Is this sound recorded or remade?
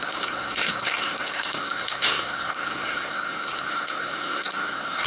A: remade